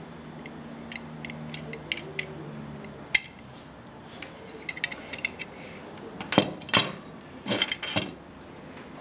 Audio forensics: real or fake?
real